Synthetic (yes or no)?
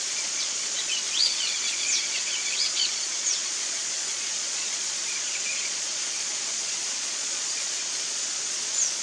yes